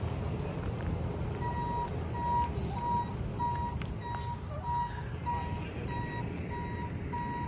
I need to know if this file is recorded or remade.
recorded